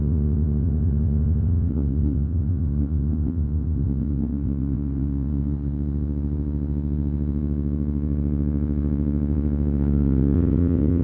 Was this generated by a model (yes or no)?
yes